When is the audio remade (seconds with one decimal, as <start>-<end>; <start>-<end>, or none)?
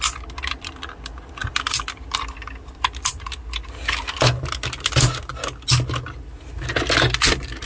none